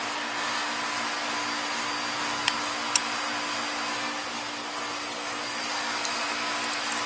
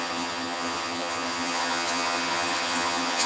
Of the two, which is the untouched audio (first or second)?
first